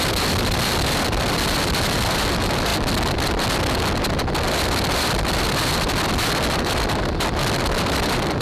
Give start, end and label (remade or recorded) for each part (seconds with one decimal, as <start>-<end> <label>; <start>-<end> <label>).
0.0-2.7 remade; 2.7-4.5 recorded; 4.5-8.4 remade